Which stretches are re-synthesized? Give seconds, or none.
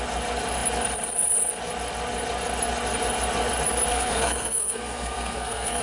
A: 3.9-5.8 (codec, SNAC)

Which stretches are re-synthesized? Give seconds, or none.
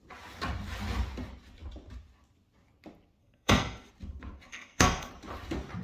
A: 3.2-3.9 (codec, SNAC); 4.5-5.1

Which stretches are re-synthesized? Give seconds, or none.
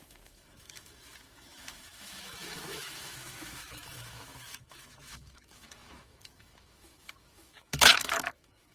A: 0.0-8.7 (autoencoder, DAC-VAE)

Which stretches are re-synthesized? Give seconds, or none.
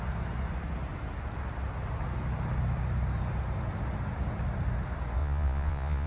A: 5.2-6.1 (vocoder, Vocos)